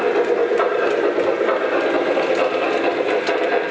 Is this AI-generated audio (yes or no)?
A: no